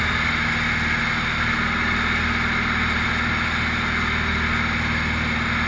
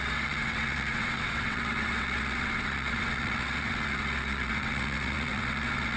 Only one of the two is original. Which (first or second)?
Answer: first